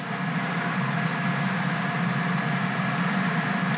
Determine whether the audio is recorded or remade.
recorded